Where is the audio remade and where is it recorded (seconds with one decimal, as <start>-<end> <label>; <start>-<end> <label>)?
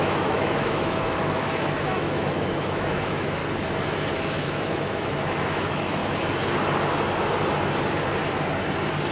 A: 0.0-3.4 remade; 3.4-4.1 recorded; 4.1-6.0 remade; 6.0-9.1 recorded